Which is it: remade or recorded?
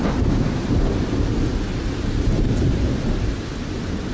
recorded